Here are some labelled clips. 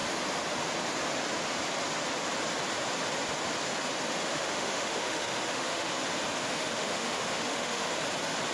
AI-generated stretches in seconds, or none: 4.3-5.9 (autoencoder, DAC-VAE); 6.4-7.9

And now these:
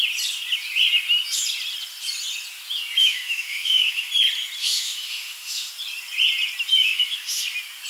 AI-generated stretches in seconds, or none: 3.0-4.1 (autoencoder, DAC-VAE); 4.6-5.7; 6.8-7.4